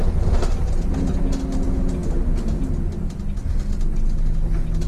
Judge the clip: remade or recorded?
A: recorded